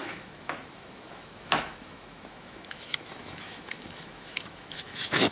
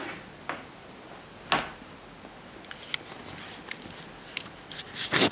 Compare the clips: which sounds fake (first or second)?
first